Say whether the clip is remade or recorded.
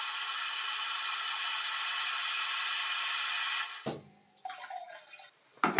recorded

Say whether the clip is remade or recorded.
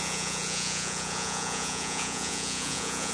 remade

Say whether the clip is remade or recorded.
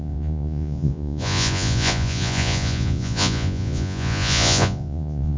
remade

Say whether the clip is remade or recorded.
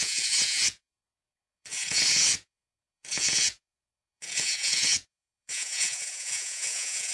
remade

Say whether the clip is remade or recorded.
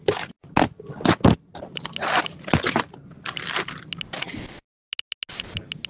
recorded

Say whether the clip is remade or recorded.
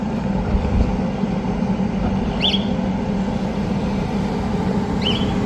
recorded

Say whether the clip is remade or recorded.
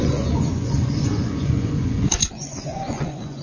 remade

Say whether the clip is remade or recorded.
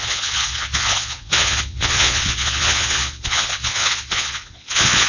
remade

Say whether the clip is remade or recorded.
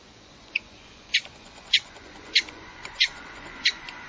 remade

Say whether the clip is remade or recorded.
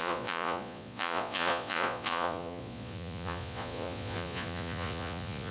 remade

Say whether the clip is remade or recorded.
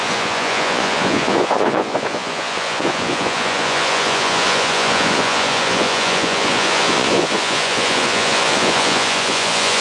remade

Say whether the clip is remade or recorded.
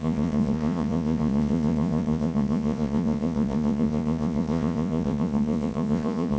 remade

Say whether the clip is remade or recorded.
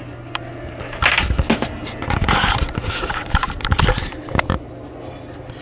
recorded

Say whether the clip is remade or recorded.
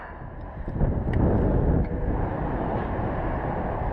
recorded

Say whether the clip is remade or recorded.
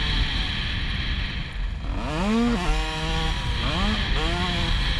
recorded